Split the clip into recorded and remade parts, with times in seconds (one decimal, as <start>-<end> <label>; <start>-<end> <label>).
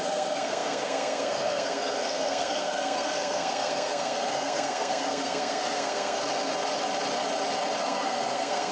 0.0-6.2 remade; 6.2-7.8 recorded; 7.8-8.7 remade